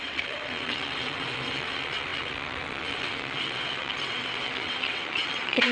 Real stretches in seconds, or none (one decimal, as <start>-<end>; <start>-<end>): none